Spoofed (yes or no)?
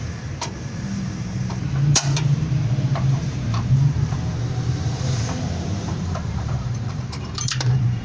yes